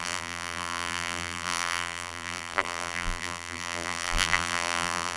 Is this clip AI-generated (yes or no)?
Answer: yes